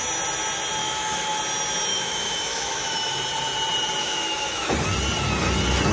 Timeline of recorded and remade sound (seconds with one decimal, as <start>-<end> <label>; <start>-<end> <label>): 0.0-0.8 recorded; 0.8-1.4 remade; 1.4-1.9 recorded; 1.9-3.2 remade; 3.2-4.0 recorded; 4.0-4.7 remade; 4.7-5.9 recorded